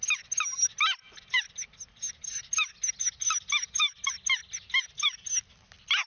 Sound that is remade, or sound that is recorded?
recorded